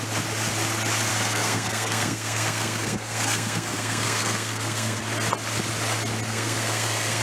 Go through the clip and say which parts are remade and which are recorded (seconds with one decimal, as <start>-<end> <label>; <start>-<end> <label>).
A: 0.0-1.1 recorded; 1.1-5.0 remade; 5.0-6.3 recorded; 6.3-7.2 remade